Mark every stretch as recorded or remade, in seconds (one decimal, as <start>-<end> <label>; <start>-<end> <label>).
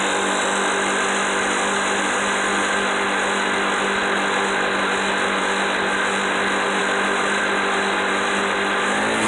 0.0-9.3 recorded